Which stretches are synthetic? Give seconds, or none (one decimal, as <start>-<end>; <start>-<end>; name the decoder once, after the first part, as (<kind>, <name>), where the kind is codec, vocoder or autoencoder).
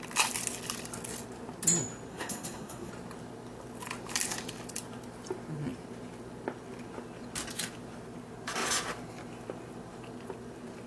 2.1-2.9 (codec, SNAC)